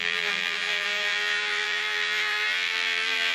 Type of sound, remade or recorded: remade